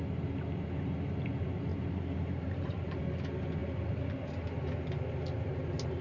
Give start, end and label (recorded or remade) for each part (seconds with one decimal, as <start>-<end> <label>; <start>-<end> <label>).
0.0-1.7 recorded; 1.7-3.0 remade; 3.0-6.0 recorded